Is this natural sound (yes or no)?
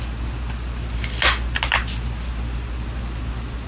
yes